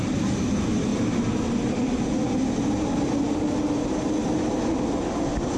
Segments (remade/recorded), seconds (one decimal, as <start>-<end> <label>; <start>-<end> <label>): 0.0-5.6 recorded